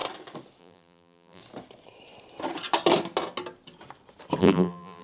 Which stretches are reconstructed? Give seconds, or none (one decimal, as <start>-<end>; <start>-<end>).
0.6-1.4; 4.4-5.0